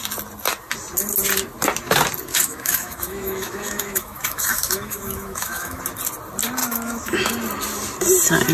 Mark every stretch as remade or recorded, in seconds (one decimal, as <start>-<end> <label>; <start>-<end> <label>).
0.0-2.3 recorded; 2.3-5.8 remade; 5.8-6.6 recorded; 6.6-7.3 remade; 7.3-8.5 recorded